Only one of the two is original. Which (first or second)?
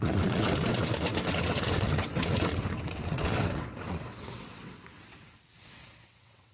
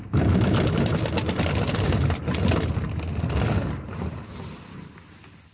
second